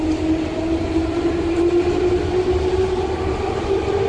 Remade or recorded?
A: recorded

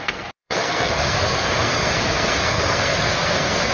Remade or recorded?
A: remade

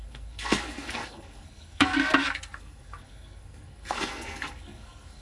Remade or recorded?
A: remade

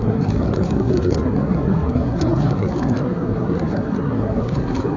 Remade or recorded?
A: remade